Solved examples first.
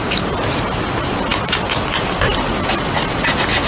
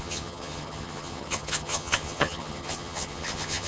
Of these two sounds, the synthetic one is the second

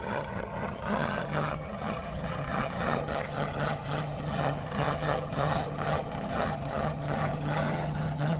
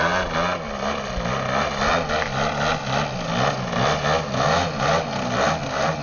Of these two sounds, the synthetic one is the first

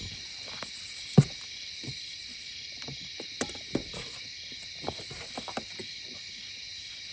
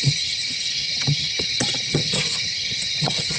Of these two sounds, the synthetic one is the second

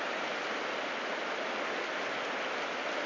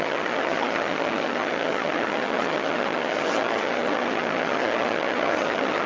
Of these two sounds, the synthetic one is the second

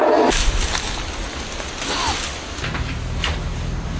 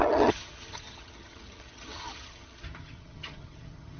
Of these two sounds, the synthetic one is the second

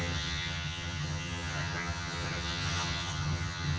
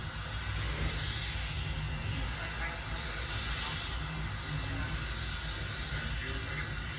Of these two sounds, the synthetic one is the first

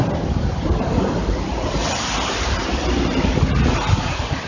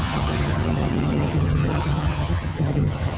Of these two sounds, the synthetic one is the second